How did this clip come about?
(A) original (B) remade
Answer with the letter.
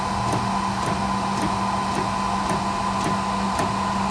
A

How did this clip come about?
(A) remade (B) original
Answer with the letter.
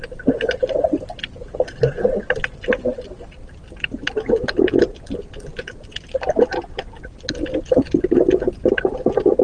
B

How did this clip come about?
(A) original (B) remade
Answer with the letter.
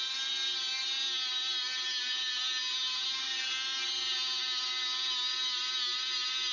A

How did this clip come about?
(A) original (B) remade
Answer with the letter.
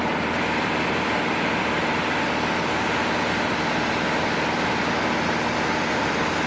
A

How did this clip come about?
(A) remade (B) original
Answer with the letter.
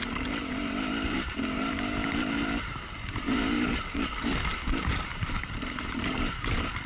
A